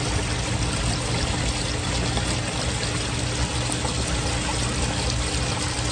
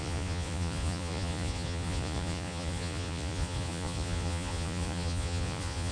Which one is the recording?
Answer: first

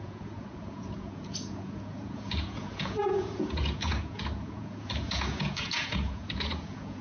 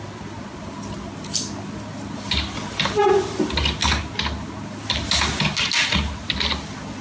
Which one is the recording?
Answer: second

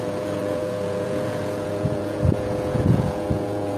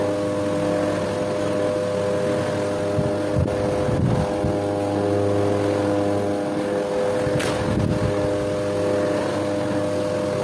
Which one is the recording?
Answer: second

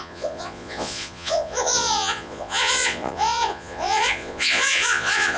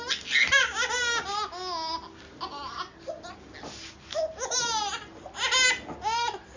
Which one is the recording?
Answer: second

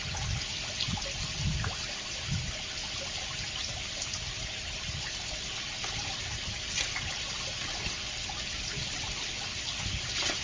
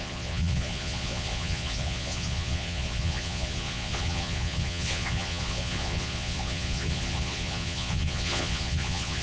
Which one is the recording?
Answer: first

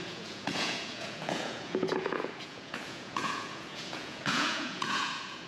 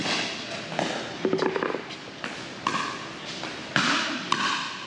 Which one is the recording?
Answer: second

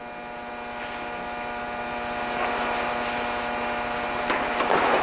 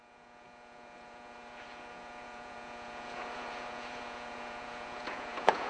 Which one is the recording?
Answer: first